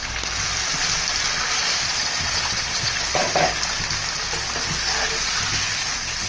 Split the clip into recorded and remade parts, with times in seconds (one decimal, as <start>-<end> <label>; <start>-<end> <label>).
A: 0.0-1.4 recorded; 1.4-3.2 remade; 3.2-6.3 recorded

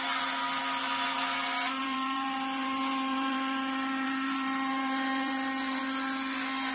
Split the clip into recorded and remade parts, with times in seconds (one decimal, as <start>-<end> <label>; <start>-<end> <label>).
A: 0.0-1.8 recorded; 1.8-5.8 remade; 5.8-6.7 recorded